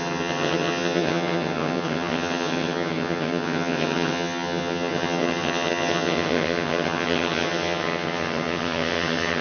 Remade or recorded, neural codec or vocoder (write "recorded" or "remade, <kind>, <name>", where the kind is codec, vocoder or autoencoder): remade, vocoder, HiFi-GAN